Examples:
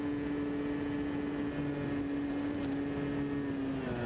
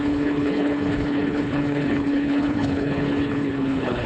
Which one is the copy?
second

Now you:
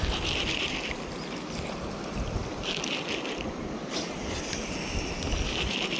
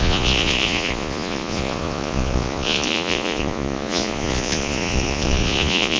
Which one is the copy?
second